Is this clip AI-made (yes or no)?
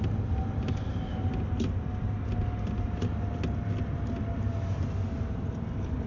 no